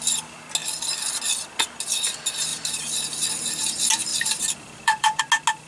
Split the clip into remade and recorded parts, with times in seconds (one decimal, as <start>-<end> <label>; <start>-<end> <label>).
0.0-0.6 recorded; 0.6-1.2 remade; 1.2-2.5 recorded; 2.5-3.3 remade; 3.3-4.1 recorded; 4.1-5.2 remade; 5.2-5.7 recorded